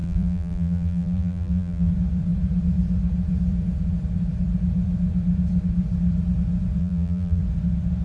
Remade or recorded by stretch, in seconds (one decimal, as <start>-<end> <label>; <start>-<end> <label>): 0.0-1.9 remade; 1.9-6.8 recorded; 6.8-7.4 remade; 7.4-8.0 recorded